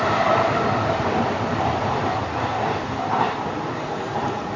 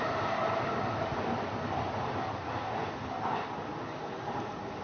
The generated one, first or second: first